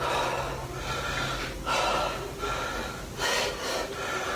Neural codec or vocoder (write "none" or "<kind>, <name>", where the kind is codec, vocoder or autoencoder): none